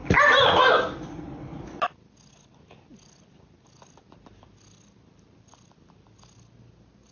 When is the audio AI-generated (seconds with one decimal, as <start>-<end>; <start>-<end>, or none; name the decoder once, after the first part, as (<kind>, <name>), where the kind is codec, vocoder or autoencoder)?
none